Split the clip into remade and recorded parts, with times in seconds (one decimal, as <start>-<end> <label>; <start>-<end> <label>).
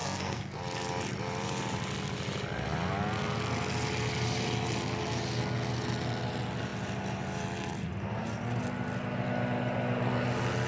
0.0-0.6 remade; 0.6-10.7 recorded